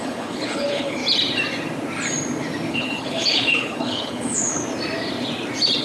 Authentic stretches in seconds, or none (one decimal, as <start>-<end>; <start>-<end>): 1.0-2.7; 4.6-5.8